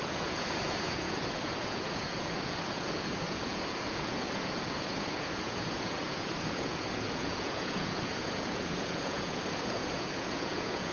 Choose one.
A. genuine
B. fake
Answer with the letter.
B